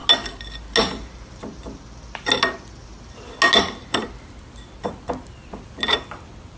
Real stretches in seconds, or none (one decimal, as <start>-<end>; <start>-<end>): 0.0-6.6